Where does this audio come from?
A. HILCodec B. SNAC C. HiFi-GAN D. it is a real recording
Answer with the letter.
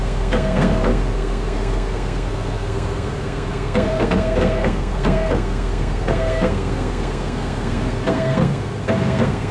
B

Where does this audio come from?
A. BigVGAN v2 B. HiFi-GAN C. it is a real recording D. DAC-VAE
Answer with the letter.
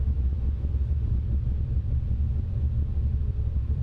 A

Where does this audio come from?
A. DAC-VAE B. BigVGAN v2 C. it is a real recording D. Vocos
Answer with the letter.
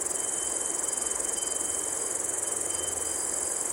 C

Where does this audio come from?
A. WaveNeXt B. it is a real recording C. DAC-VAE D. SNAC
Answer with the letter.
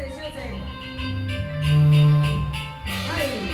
B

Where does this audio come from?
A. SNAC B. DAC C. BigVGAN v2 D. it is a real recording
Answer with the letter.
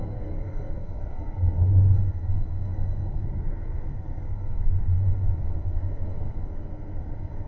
A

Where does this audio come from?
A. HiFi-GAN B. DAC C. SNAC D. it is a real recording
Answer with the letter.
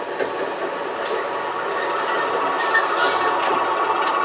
D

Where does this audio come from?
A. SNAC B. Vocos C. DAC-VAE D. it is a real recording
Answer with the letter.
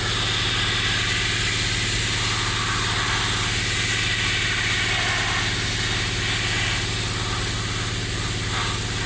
D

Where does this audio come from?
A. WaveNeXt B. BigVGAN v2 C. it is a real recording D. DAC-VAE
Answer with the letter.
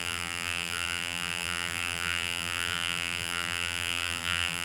B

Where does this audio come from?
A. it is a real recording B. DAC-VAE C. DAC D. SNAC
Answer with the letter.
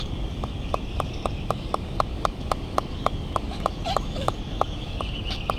C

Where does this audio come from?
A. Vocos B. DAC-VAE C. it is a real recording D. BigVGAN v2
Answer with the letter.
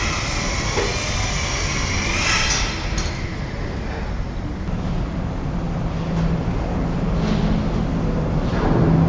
C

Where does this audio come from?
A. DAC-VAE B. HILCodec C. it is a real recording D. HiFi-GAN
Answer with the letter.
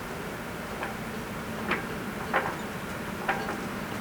C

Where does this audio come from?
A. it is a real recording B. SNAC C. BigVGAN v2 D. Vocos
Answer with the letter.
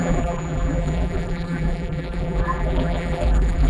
C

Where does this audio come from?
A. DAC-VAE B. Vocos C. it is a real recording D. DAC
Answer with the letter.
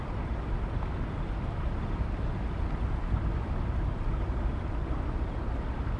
C